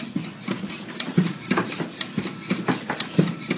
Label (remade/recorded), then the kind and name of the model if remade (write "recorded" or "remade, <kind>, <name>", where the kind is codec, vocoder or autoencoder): recorded